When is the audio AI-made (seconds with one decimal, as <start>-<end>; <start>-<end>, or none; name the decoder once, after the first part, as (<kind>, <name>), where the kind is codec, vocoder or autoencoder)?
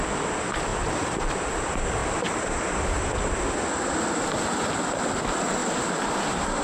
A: 0.0-0.7 (vocoder, BigVGAN v2); 1.5-2.0; 4.2-6.6